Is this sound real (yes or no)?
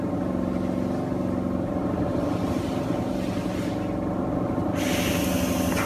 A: yes